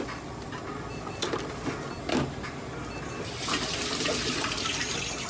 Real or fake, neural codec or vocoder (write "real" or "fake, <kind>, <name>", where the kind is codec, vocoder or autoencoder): real